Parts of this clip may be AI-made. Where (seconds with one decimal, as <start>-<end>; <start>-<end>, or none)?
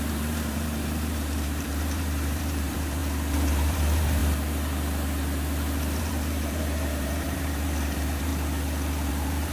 0.0-3.0; 3.5-4.2; 6.0-8.3; 9.1-9.5